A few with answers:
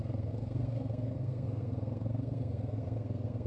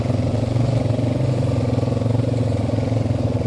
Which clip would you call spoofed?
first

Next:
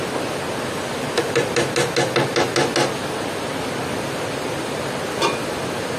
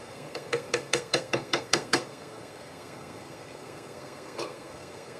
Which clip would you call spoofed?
second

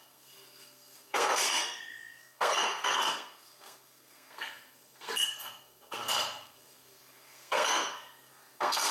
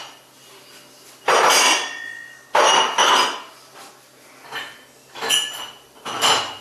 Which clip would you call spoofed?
first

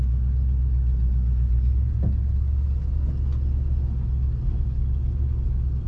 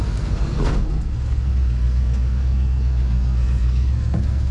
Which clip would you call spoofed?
second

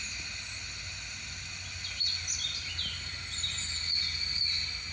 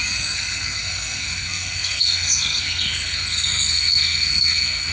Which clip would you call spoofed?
second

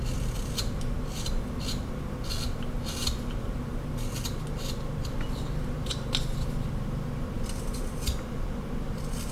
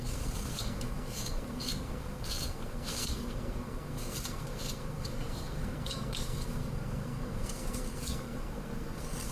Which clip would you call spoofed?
second